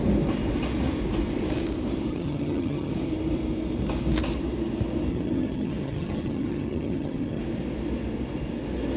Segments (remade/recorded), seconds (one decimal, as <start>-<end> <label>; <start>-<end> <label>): 0.0-2.1 recorded; 2.1-2.9 remade; 2.9-5.1 recorded; 5.1-7.4 remade; 7.4-9.0 recorded